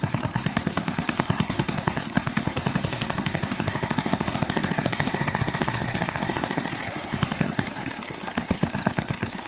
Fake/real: fake